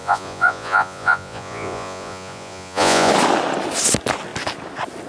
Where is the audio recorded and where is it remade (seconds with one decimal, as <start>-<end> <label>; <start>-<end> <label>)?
0.0-3.1 remade; 3.1-5.1 recorded